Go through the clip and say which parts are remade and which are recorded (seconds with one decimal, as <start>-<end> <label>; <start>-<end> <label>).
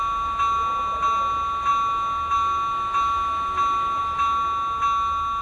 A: 0.0-5.4 recorded